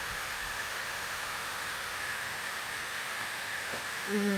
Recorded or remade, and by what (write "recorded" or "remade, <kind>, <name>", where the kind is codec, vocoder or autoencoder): remade, autoencoder, DAC-VAE